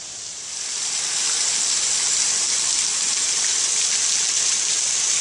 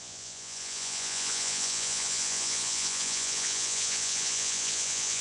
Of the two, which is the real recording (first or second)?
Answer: first